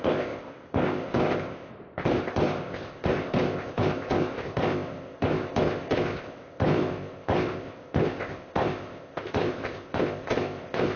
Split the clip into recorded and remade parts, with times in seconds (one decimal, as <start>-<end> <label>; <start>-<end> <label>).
0.0-1.7 remade; 1.7-2.2 recorded; 2.2-11.0 remade